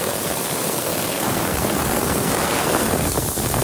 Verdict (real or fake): fake